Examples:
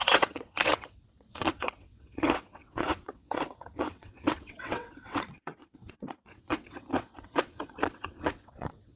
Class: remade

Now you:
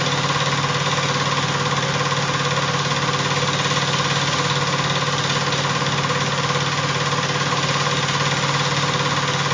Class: recorded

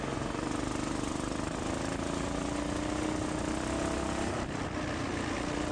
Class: recorded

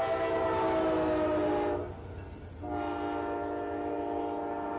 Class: recorded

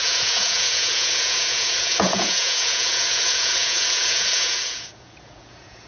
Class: remade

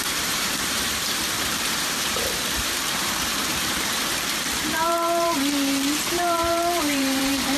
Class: remade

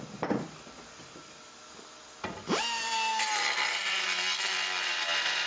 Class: remade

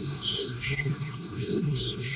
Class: remade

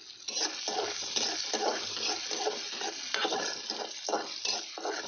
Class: recorded